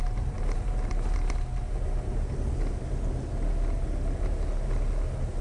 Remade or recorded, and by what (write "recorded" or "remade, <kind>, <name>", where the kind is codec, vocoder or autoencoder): recorded